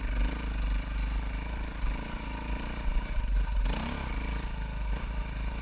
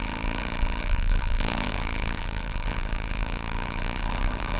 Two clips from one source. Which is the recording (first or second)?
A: first